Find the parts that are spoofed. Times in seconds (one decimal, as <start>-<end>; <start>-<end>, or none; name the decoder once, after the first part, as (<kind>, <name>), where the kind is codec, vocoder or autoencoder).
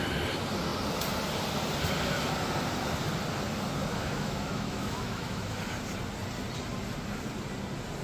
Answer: 3.9-5.6 (autoencoder, DAC-VAE)